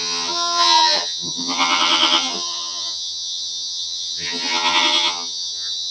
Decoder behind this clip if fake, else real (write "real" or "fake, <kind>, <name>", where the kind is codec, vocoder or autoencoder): fake, vocoder, HiFi-GAN